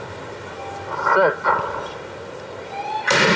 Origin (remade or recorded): recorded